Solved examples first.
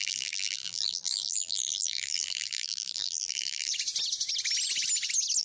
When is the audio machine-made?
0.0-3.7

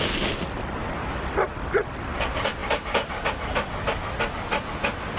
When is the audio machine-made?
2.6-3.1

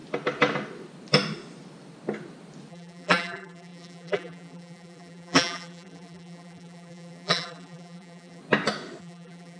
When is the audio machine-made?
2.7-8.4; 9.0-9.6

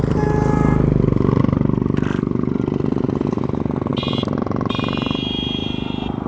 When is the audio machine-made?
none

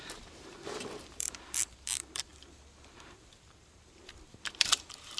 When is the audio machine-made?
0.0-2.3; 2.9-5.2

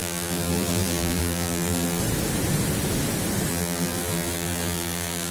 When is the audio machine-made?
0.0-2.0; 3.5-5.3

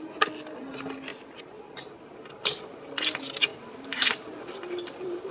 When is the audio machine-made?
3.5-5.3